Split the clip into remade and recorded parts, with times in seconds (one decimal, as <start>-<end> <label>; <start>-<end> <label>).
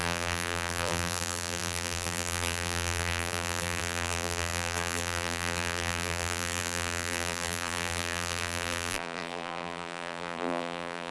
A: 0.0-11.1 remade